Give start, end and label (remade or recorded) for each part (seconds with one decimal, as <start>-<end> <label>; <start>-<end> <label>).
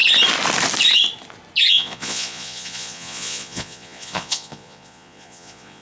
0.0-1.7 recorded; 1.7-5.8 remade